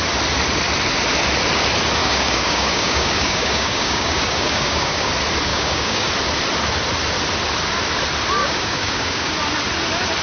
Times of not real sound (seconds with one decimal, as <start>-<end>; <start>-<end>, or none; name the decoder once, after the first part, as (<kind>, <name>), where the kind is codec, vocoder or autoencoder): 2.0-5.1 (codec, DAC); 5.5-6.1; 8.4-9.3